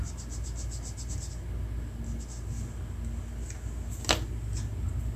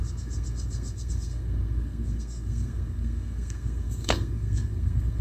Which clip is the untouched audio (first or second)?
first